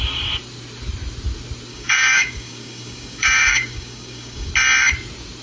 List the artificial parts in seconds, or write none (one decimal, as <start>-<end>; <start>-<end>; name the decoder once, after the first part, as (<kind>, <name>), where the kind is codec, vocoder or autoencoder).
1.7-4.5 (codec, DAC)